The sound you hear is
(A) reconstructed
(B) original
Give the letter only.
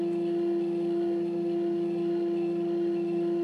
B